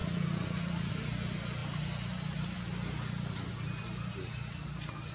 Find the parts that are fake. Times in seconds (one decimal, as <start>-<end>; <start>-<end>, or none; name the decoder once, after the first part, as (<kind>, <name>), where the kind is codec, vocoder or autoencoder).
0.0-0.9 (vocoder, Vocos)